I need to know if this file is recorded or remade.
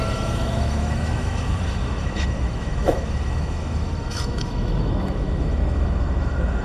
remade